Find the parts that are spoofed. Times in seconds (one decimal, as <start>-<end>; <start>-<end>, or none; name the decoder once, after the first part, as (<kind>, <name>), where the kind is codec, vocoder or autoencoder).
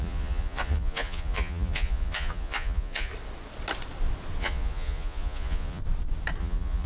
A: 0.0-3.1 (vocoder, Vocos); 4.4-5.8; 6.4-6.9